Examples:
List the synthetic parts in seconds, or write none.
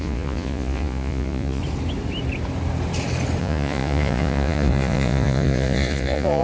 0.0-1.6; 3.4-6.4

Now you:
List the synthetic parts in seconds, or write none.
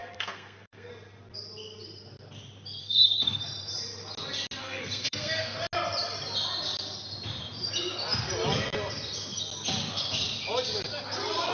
0.0-0.9; 2.8-3.4; 4.6-5.6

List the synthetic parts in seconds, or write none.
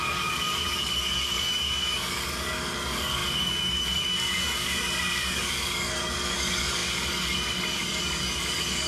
0.0-8.9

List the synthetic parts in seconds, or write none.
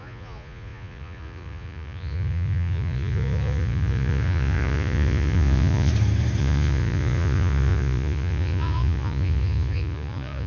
0.0-5.9; 6.4-10.5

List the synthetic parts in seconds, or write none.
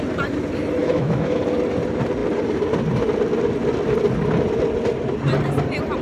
0.8-1.4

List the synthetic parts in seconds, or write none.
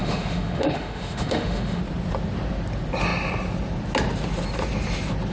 0.0-1.8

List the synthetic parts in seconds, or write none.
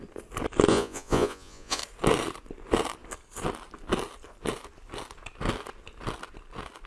0.7-1.8